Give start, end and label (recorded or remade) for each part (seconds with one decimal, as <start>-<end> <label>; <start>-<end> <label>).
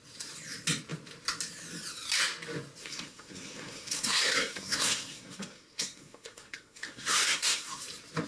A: 0.0-2.8 recorded; 2.8-7.8 remade; 7.8-8.3 recorded